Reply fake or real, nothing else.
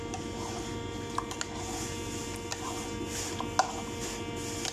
real